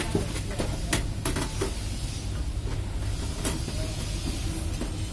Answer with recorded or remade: recorded